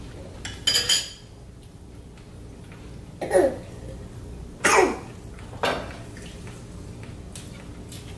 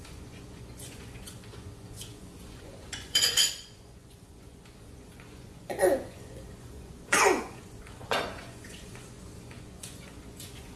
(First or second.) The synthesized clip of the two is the second